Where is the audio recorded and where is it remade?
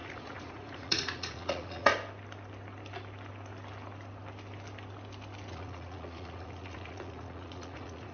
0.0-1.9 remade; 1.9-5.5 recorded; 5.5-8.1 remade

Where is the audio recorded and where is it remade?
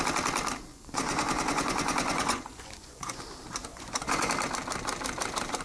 0.0-0.7 recorded; 0.7-3.2 remade; 3.2-3.7 recorded; 3.7-4.3 remade; 4.3-5.6 recorded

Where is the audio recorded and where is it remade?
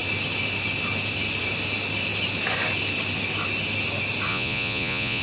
0.0-4.3 recorded; 4.3-5.2 remade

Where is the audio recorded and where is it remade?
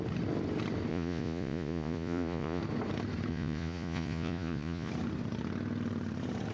0.0-0.9 recorded; 0.9-2.6 remade; 2.6-3.3 recorded; 3.3-4.9 remade; 4.9-6.5 recorded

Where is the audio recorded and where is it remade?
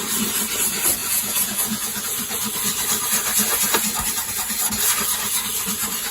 0.0-1.0 recorded; 1.0-2.0 remade; 2.0-6.1 recorded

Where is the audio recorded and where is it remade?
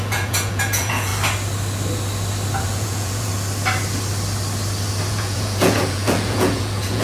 0.0-1.1 remade; 1.1-2.6 recorded; 2.6-3.3 remade; 3.3-5.1 recorded; 5.1-7.0 remade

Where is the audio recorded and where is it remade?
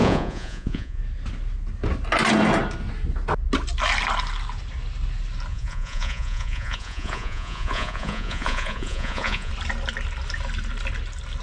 0.0-1.0 remade; 1.0-5.5 recorded; 5.5-9.5 remade; 9.5-11.4 recorded